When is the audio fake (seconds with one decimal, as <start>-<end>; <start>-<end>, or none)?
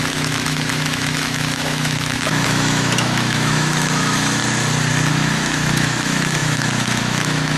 0.0-4.4; 5.1-7.6